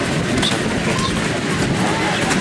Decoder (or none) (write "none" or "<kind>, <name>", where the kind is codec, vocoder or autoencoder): none